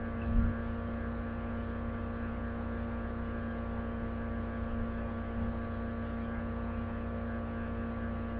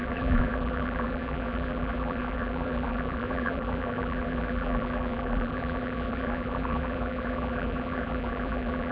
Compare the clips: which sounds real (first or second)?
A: first